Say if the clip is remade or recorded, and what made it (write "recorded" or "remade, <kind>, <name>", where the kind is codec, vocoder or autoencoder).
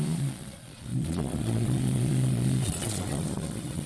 remade, vocoder, Vocos